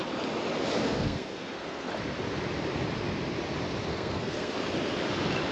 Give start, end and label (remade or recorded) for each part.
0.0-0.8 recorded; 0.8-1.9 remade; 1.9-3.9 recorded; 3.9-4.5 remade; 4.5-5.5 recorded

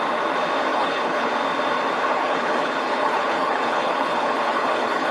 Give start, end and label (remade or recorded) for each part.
0.0-0.7 recorded; 0.7-1.3 remade; 1.3-2.1 recorded; 2.1-5.1 remade

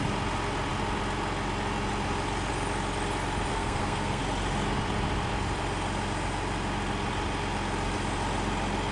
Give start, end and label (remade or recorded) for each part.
0.0-3.5 recorded; 3.5-4.2 remade; 4.2-8.9 recorded

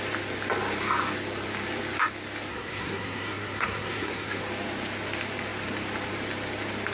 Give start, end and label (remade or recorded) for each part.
0.0-2.5 recorded; 2.5-4.4 remade; 4.4-6.9 recorded

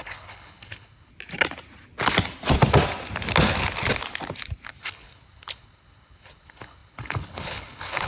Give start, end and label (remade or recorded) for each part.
0.0-1.1 remade; 1.1-4.8 recorded; 4.8-8.1 remade